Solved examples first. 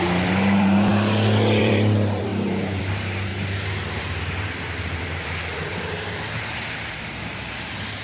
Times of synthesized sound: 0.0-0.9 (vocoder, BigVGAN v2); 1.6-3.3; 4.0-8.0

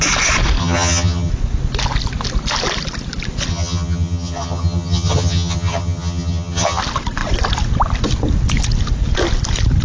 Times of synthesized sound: 0.6-1.3 (vocoder, HiFi-GAN); 3.5-6.8